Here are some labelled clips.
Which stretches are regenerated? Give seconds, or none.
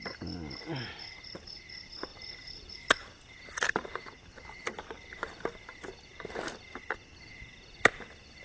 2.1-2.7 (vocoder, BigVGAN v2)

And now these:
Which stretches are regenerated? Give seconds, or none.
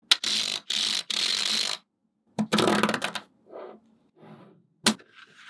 none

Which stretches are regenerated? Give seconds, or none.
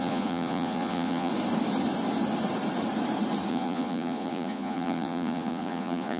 0.0-1.3 (vocoder, Vocos); 3.5-6.2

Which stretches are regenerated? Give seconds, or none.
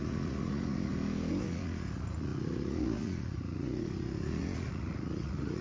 0.0-0.9 (vocoder, Vocos); 1.4-5.6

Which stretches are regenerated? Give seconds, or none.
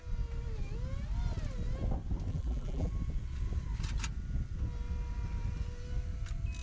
2.3-2.9 (vocoder, BigVGAN v2)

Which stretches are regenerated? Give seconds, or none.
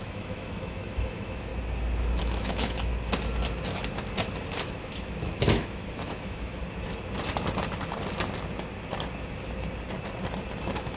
0.0-1.5 (autoencoder, DAC-VAE); 2.2-2.9; 4.6-6.6; 10.6-11.0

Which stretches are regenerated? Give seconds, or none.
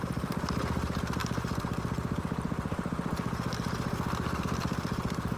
none